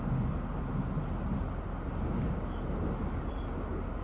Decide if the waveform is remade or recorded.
recorded